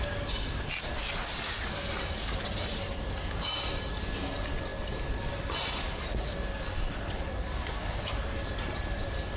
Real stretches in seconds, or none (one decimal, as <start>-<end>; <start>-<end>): 0.0-9.4